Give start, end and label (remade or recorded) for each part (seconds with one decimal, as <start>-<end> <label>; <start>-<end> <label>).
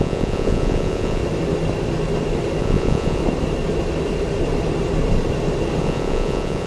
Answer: 0.0-1.2 remade; 1.2-2.6 recorded; 2.6-3.2 remade; 3.2-5.8 recorded; 5.8-6.7 remade